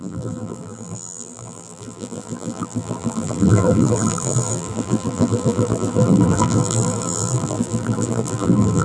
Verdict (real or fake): fake